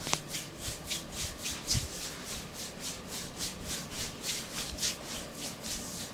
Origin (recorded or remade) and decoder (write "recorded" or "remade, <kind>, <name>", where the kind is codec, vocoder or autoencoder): remade, vocoder, BigVGAN v2